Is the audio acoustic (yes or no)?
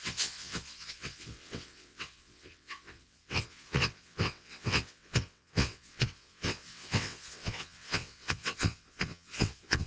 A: no